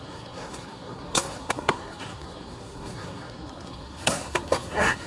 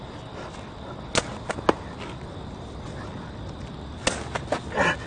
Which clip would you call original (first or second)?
second